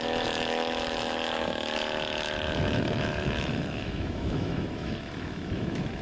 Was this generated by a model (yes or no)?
yes